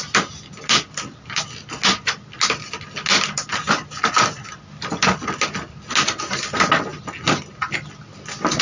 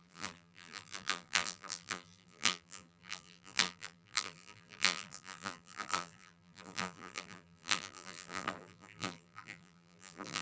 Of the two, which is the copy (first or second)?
second